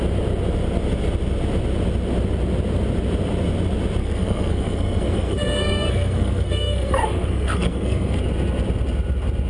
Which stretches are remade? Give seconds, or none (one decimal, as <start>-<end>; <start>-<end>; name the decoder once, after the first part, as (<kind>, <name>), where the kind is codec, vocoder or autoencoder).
4.0-8.2 (codec, SNAC)